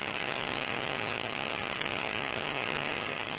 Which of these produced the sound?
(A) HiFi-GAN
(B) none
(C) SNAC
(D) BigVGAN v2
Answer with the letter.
A